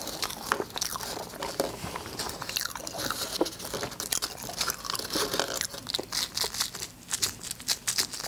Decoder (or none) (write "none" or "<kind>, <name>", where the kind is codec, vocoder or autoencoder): none